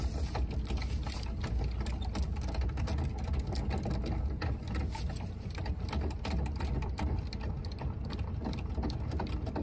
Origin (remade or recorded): recorded